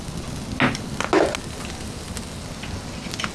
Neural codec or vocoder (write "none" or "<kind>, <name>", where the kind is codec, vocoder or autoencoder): none